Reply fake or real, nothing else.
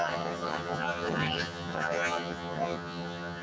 fake